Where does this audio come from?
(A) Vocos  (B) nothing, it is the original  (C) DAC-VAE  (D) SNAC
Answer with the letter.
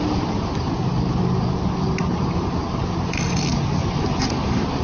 B